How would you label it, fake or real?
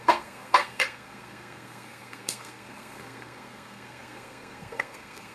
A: fake